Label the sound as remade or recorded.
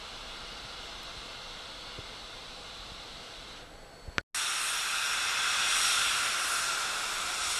recorded